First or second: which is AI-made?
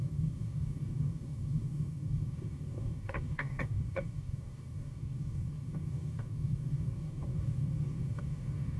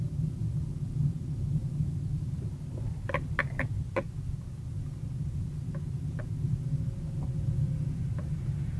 first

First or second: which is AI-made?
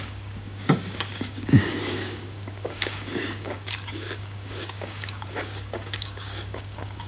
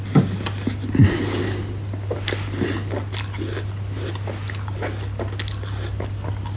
first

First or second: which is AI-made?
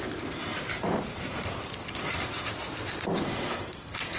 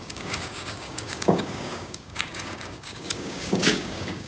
second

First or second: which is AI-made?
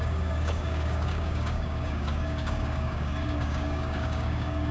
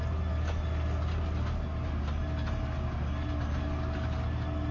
first